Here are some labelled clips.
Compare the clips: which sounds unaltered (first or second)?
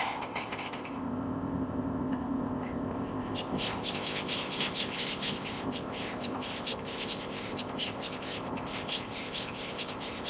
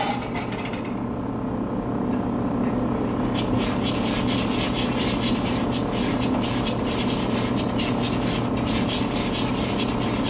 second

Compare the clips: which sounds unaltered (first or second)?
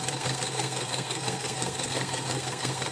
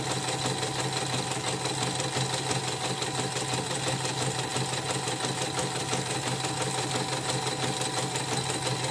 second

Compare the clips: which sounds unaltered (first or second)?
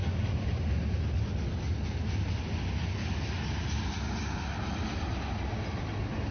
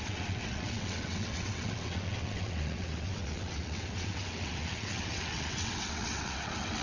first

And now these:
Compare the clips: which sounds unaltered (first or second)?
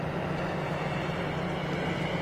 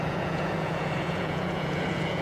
first